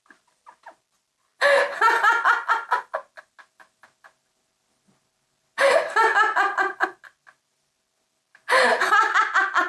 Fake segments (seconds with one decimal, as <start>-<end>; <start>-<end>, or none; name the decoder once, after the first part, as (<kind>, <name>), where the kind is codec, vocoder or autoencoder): none